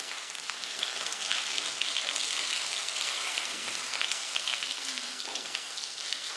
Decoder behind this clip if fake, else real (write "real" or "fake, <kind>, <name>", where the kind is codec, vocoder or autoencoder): fake, codec, SNAC